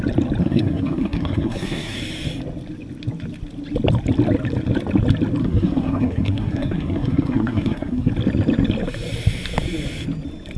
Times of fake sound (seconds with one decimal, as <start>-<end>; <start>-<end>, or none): 0.4-2.0; 5.4-8.1